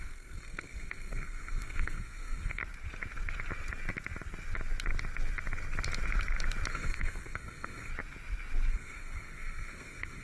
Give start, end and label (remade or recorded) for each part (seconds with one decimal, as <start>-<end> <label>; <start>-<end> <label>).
0.0-2.6 remade; 2.6-6.7 recorded; 6.7-7.9 remade; 7.9-8.7 recorded; 8.7-10.2 remade